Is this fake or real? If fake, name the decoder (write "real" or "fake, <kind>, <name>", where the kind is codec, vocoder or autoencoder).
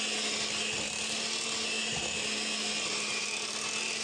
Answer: real